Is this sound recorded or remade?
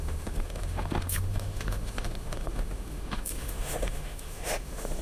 remade